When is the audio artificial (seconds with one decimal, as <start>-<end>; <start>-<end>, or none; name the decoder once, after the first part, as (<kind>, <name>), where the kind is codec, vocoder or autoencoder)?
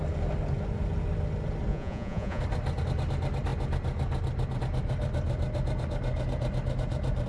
1.7-2.4 (vocoder, Vocos)